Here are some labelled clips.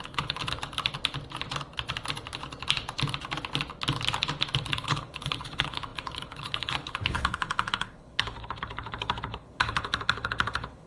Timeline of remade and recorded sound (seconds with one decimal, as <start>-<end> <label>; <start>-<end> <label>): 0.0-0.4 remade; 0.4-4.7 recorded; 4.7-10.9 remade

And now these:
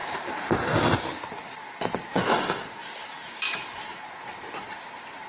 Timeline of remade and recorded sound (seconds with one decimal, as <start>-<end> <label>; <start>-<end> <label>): 0.0-0.5 remade; 0.5-1.6 recorded; 1.6-2.4 remade; 2.4-2.8 recorded; 2.8-3.4 remade; 3.4-5.3 recorded

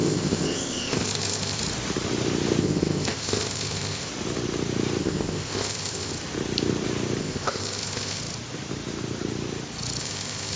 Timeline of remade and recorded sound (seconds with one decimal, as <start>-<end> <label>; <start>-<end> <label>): 0.0-1.6 remade; 1.6-2.6 recorded; 2.6-4.1 remade; 4.1-5.0 recorded; 5.0-6.1 remade; 6.1-7.2 recorded; 7.2-8.2 remade; 8.2-10.0 recorded; 10.0-10.6 remade

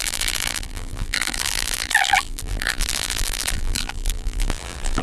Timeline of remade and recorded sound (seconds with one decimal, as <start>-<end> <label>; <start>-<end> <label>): 0.0-5.0 remade

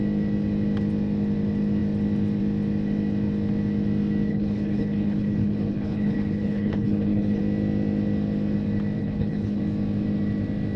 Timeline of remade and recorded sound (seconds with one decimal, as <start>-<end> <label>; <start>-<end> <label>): 0.0-4.3 recorded; 4.3-7.4 remade; 7.4-9.0 recorded; 9.0-9.6 remade; 9.6-10.8 recorded

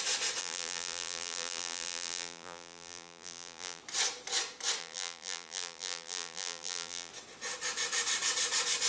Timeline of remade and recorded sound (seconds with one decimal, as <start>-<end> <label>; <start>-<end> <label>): 0.0-0.4 recorded; 0.4-3.8 remade; 3.8-4.8 recorded; 4.8-7.1 remade; 7.1-8.9 recorded

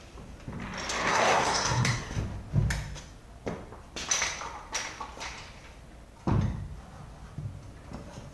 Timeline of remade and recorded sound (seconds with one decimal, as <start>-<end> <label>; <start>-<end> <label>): 0.0-1.1 recorded; 1.1-2.2 remade; 2.2-8.3 recorded

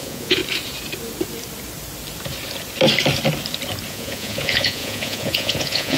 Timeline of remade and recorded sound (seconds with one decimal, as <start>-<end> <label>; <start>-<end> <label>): 0.0-0.4 remade; 0.4-3.9 recorded; 3.9-6.0 remade